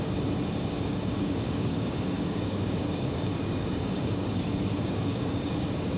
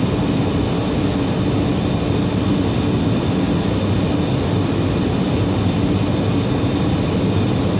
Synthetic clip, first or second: first